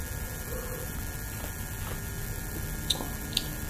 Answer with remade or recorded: recorded